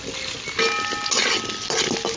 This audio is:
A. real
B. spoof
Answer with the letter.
A